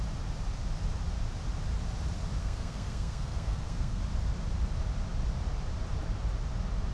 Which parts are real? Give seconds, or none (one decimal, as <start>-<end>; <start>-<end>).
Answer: 0.0-2.4; 4.0-6.9